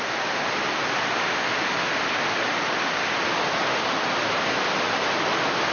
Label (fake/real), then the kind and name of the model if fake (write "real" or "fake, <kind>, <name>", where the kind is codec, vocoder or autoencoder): real